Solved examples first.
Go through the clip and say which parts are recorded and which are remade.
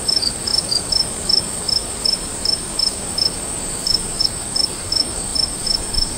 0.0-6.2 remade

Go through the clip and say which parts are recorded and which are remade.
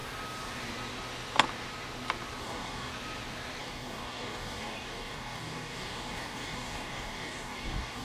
0.0-2.4 recorded; 2.4-2.9 remade; 2.9-3.6 recorded; 3.6-8.0 remade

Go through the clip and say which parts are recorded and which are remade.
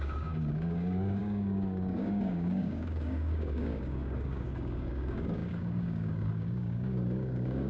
0.0-7.7 remade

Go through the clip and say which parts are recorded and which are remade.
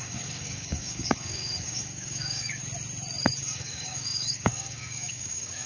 0.0-2.6 remade; 2.6-3.4 recorded; 3.4-5.7 remade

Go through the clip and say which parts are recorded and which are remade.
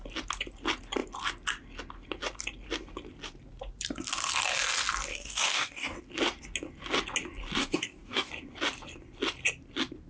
0.0-5.1 recorded; 5.1-6.0 remade; 6.0-7.6 recorded; 7.6-8.3 remade; 8.3-10.1 recorded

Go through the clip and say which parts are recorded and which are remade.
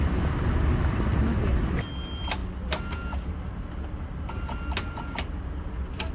0.0-6.1 recorded